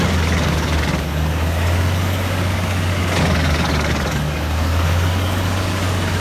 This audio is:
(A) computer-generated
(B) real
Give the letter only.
A